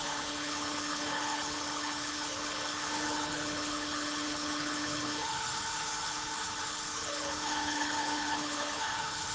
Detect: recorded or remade remade